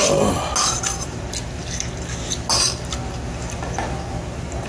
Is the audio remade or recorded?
recorded